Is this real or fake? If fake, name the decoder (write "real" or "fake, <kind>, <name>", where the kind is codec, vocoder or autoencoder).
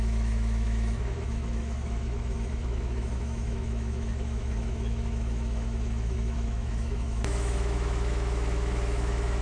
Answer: fake, autoencoder, DAC-VAE